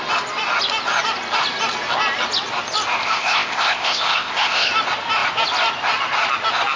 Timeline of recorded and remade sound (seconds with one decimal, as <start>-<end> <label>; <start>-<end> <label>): 0.0-3.0 recorded; 3.0-4.7 remade; 4.7-6.8 recorded